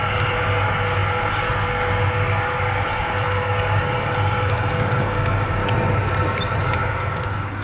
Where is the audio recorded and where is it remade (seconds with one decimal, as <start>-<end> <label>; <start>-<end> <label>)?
0.0-5.6 remade; 5.6-6.6 recorded; 6.6-7.6 remade